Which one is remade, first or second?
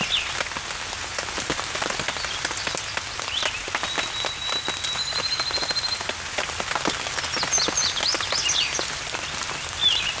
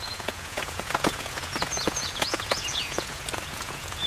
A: second